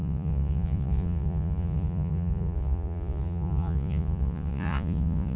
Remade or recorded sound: remade